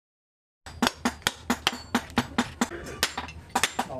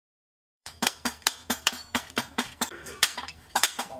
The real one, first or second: first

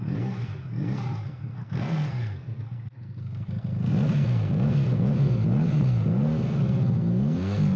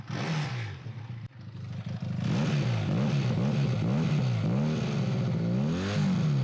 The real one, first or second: second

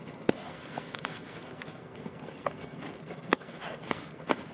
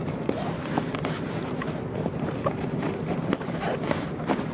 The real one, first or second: second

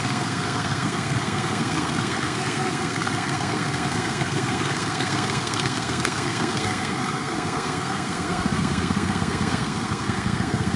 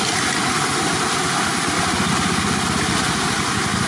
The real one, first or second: second